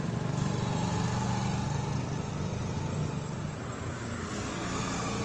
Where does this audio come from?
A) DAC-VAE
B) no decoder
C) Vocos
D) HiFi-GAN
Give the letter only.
B